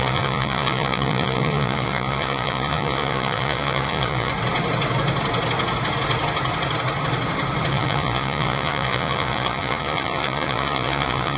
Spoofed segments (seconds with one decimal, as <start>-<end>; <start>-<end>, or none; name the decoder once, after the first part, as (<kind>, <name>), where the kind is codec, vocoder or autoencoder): 0.0-4.3 (vocoder, Vocos); 7.7-11.4